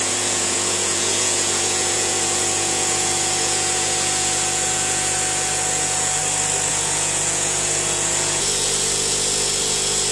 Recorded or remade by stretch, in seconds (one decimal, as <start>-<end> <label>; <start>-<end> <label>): 0.0-6.2 remade; 6.2-6.7 recorded; 6.7-10.1 remade